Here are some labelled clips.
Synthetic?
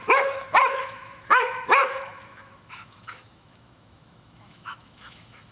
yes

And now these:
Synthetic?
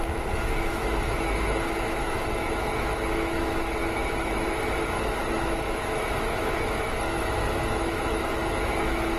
yes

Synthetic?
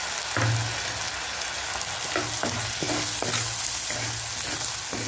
no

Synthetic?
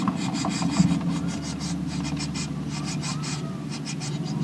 no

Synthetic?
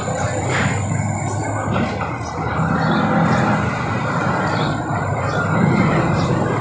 no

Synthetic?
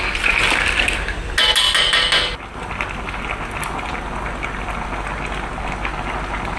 no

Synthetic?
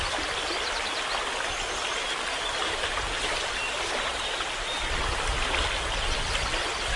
no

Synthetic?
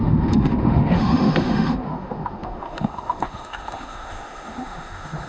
yes